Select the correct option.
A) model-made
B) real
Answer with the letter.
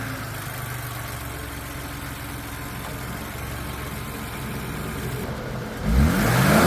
B